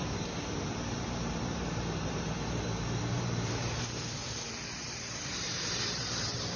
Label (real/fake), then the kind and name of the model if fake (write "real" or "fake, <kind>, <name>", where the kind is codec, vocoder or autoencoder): fake, vocoder, BigVGAN v2